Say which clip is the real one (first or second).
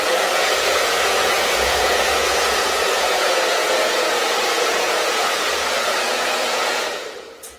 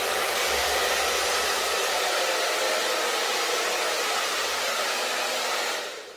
second